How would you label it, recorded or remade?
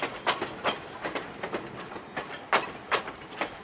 recorded